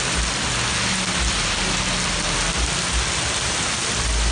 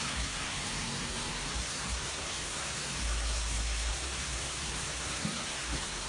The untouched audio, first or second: first